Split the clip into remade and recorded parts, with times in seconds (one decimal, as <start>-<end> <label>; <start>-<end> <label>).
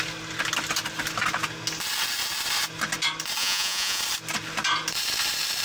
0.0-3.4 recorded; 3.4-4.0 remade; 4.0-5.6 recorded